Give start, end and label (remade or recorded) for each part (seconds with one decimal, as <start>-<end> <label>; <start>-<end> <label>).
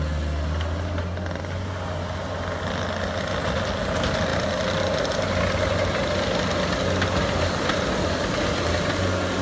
0.0-9.4 recorded